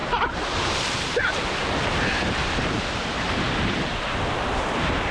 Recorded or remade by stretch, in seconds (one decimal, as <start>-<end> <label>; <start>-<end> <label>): 0.0-5.1 remade